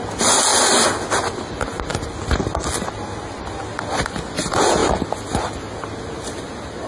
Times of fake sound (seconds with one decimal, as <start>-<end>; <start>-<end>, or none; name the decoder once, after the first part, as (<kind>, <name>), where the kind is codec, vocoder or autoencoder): none